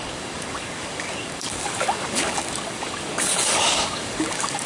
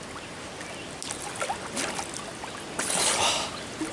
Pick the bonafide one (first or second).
second